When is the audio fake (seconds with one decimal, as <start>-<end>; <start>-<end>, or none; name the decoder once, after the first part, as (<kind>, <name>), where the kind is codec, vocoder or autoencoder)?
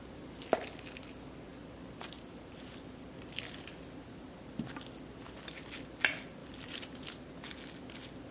1.5-3.7 (vocoder, BigVGAN v2); 6.4-7.1